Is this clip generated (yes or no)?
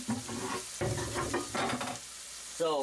no